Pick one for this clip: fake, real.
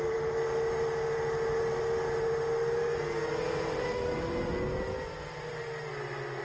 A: real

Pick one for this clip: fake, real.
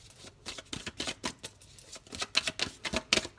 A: real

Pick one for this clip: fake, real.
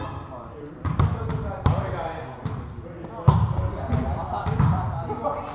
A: real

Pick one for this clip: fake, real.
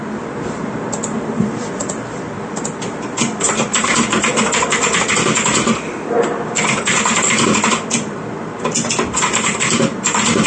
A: real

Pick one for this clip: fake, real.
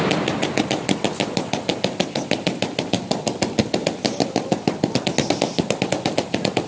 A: real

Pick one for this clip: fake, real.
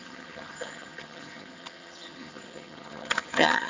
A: fake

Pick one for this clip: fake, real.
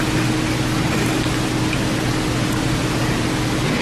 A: real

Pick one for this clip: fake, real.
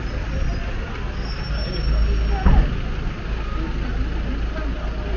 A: real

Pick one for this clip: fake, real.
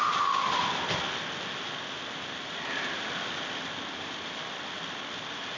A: real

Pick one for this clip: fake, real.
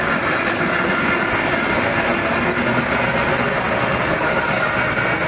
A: real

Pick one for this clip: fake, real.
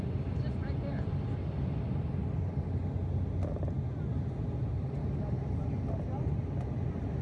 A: real